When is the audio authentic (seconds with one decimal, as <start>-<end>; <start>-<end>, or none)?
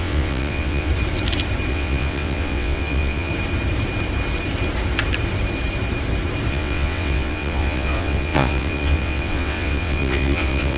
0.9-1.7; 3.3-6.5